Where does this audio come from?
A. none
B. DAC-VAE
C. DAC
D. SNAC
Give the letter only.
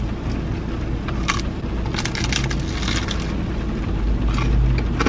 A